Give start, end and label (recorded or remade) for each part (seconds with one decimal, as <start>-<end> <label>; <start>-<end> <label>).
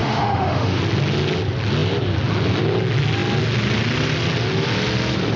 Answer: 0.0-0.8 remade; 0.8-5.4 recorded